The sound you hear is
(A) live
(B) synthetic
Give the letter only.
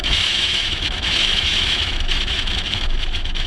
B